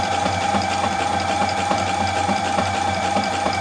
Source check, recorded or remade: recorded